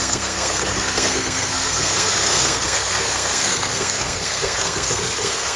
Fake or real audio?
fake